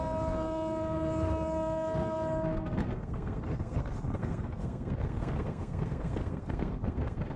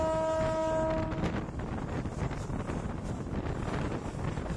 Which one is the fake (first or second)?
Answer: first